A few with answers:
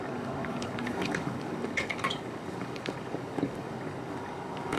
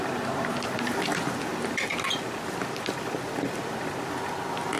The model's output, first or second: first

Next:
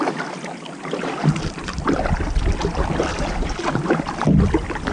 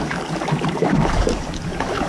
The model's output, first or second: second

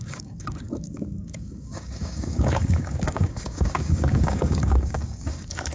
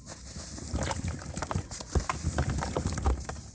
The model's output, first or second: first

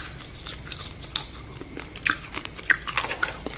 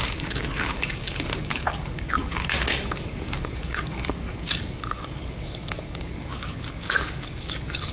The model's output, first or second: second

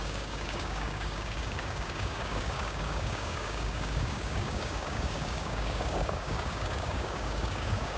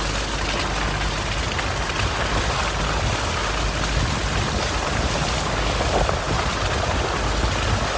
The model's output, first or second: first